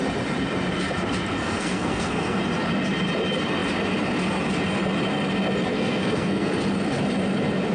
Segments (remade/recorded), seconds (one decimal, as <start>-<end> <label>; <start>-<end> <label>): 0.0-1.4 recorded; 1.4-2.4 remade; 2.4-5.7 recorded; 5.7-6.5 remade; 6.5-7.7 recorded